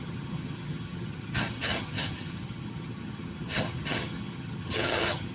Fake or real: fake